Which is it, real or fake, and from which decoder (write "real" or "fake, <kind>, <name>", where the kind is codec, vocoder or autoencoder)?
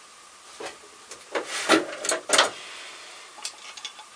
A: real